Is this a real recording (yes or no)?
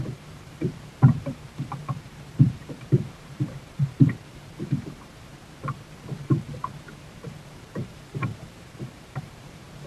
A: no